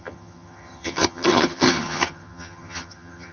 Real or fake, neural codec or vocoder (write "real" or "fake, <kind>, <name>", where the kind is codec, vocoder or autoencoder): fake, vocoder, HiFi-GAN